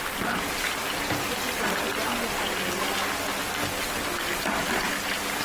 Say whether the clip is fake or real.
real